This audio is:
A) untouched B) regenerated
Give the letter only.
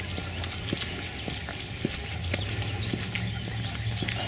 A